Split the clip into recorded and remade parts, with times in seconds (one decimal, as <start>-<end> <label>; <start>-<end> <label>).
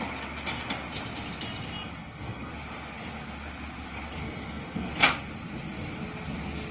0.0-2.0 recorded; 2.0-2.5 remade; 2.5-4.2 recorded; 4.2-4.9 remade; 4.9-6.7 recorded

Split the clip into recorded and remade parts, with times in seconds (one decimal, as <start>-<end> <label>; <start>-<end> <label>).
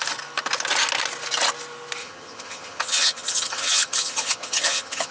0.0-2.0 recorded; 2.0-5.1 remade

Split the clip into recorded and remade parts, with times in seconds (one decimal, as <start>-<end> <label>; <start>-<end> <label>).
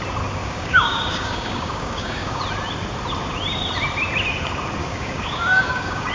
0.0-0.4 recorded; 0.4-2.4 remade; 2.4-4.8 recorded; 4.8-6.1 remade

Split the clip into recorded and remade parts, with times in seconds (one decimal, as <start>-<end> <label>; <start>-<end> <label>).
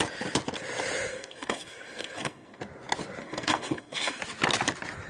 0.0-1.1 recorded; 1.1-2.6 remade; 2.6-3.2 recorded; 3.2-4.2 remade; 4.2-5.1 recorded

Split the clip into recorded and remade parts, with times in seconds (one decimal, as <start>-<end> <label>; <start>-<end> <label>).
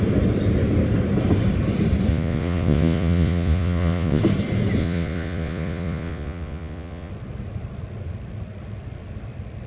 0.0-2.1 recorded; 2.1-4.2 remade; 4.2-4.8 recorded; 4.8-7.1 remade; 7.1-9.7 recorded